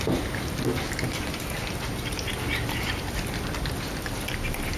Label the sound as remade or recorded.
recorded